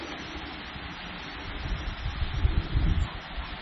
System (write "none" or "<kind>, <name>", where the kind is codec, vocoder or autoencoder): none